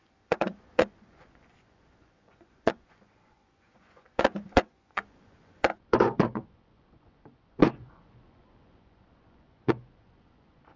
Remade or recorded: remade